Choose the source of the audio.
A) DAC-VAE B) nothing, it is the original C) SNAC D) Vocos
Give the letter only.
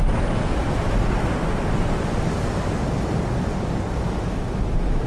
B